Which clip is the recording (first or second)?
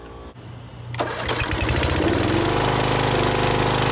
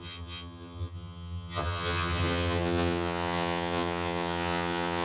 first